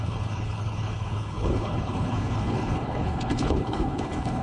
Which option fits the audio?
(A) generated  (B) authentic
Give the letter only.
A